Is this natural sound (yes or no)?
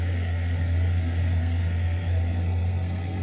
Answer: no